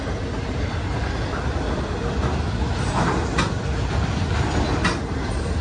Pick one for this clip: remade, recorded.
recorded